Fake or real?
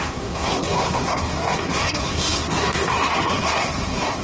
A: fake